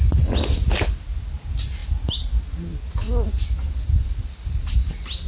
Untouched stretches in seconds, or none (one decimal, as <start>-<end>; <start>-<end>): 0.0-5.3